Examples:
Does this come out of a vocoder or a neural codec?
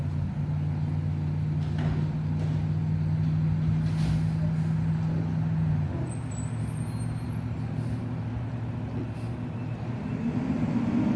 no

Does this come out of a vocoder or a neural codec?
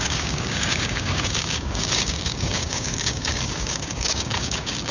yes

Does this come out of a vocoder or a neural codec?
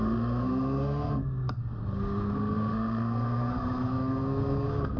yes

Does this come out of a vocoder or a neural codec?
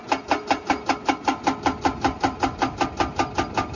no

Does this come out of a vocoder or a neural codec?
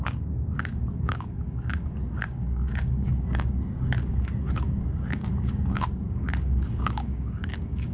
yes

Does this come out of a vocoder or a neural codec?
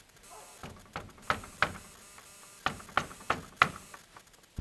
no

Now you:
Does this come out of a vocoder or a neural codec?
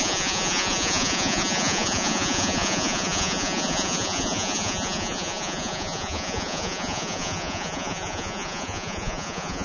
yes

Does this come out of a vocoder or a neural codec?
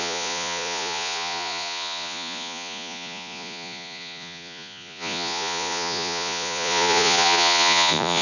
yes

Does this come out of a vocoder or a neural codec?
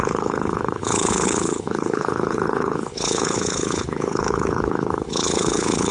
yes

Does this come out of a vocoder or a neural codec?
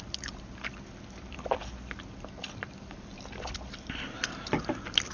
yes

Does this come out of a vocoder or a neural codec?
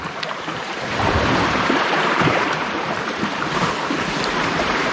yes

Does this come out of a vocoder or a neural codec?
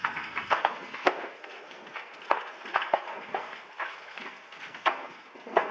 yes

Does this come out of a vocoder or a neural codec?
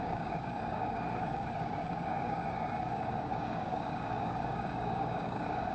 yes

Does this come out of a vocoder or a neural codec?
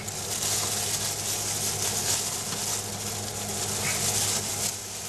no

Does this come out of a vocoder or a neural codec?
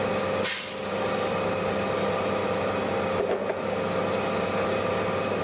no